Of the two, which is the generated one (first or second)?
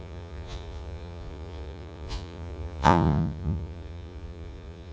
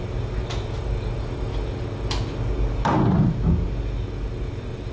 first